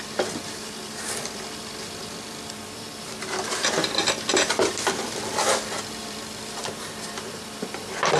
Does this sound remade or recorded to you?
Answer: remade